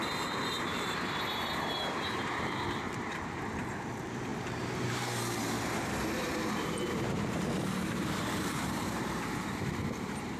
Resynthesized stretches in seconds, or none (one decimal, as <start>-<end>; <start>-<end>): 0.0-10.4